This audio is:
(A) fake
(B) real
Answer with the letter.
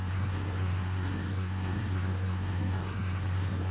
A